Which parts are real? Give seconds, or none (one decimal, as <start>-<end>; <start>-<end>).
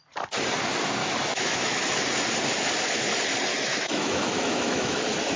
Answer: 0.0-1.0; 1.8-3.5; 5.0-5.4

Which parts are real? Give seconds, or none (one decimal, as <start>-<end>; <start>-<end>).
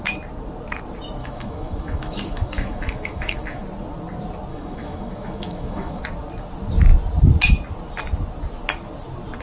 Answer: 0.0-1.2; 3.6-4.5; 6.0-9.4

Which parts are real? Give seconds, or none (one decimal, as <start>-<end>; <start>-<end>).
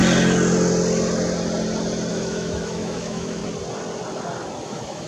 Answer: 0.0-2.1; 3.4-4.6